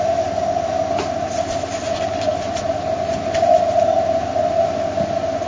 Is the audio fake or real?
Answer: real